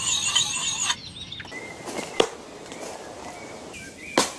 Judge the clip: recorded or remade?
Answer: recorded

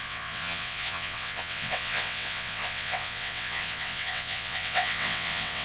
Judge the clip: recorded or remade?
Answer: remade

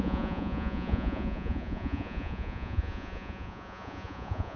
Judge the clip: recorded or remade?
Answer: remade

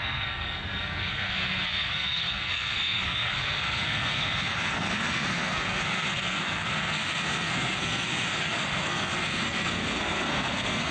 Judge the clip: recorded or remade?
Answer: remade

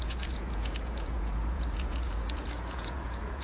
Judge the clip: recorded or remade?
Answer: remade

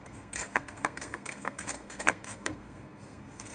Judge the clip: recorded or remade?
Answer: remade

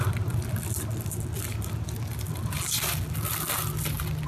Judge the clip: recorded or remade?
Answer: recorded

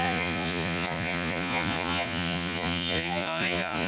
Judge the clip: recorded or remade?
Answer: remade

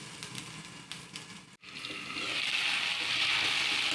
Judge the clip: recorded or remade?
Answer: recorded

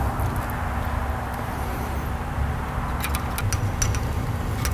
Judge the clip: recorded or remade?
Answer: recorded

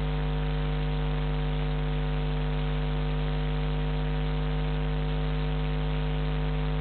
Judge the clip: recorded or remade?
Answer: recorded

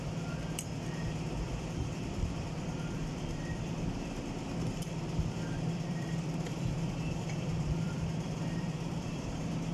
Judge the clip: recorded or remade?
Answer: remade